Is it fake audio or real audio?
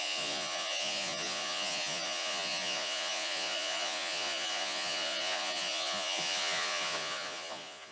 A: fake